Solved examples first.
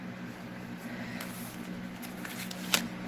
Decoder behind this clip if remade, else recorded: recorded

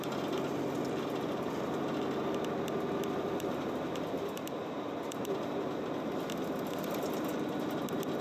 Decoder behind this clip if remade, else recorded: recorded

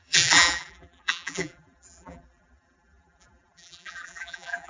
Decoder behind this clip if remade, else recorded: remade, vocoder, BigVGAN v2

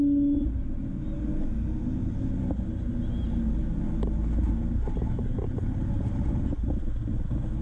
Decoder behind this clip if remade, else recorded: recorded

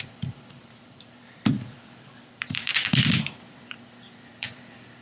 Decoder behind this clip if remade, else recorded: remade, vocoder, BigVGAN v2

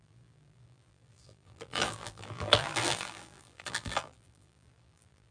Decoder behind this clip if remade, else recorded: remade, vocoder, BigVGAN v2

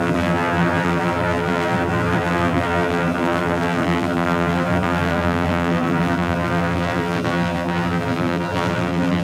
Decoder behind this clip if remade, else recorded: remade, vocoder, BigVGAN v2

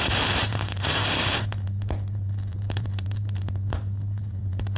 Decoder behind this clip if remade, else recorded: remade, vocoder, BigVGAN v2